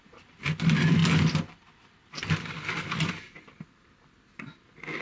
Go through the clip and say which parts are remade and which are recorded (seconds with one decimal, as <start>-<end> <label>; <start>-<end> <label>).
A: 0.0-5.0 recorded